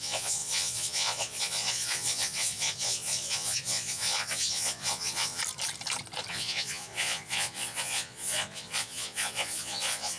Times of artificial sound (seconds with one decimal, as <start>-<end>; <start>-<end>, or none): 0.0-5.4; 6.3-10.2